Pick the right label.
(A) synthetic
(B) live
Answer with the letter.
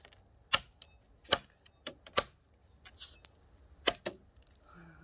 B